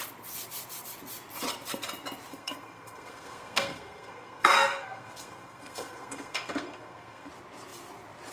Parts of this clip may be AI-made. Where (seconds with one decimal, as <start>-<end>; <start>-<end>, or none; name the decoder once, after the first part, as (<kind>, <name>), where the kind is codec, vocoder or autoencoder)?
2.3-7.3 (codec, SNAC)